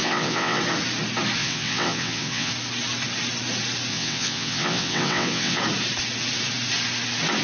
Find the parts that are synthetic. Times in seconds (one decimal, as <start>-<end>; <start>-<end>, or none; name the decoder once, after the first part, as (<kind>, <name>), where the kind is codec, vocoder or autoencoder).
0.0-0.6 (vocoder, WaveNeXt); 1.4-2.5; 3.9-5.6